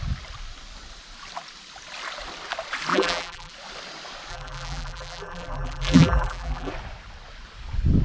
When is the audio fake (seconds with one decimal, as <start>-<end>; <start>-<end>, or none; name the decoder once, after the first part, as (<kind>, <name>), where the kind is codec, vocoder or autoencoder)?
2.9-3.5 (vocoder, BigVGAN v2); 4.3-6.7